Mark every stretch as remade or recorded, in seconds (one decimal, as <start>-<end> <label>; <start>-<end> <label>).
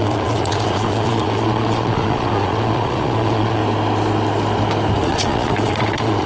0.0-3.6 remade; 3.6-5.0 recorded; 5.0-6.3 remade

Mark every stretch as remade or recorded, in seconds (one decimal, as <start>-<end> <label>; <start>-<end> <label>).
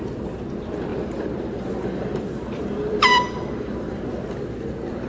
0.0-0.9 recorded; 0.9-4.0 remade; 4.0-5.1 recorded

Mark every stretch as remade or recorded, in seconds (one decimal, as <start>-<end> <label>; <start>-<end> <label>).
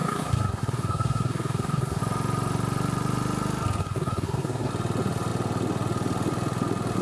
0.0-2.0 remade; 2.0-3.8 recorded; 3.8-4.7 remade; 4.7-7.0 recorded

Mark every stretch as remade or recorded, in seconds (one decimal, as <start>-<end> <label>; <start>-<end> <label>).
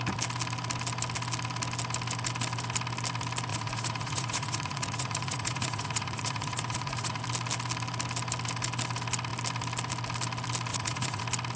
0.0-3.5 recorded; 3.5-7.2 remade; 7.2-10.7 recorded; 10.7-11.2 remade; 11.2-11.6 recorded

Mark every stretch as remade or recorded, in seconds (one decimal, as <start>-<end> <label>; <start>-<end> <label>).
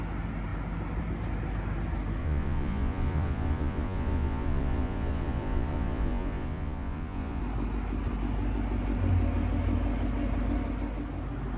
0.0-2.2 recorded; 2.2-7.4 remade; 7.4-11.6 recorded